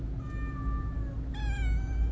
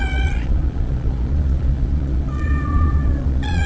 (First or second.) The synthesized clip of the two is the second